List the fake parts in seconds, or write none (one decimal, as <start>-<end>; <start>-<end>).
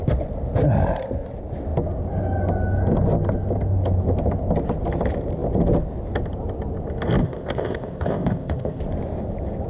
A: 7.2-8.8